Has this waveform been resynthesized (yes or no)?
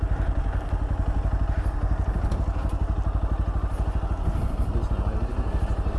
no